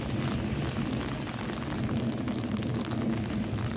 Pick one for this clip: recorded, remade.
recorded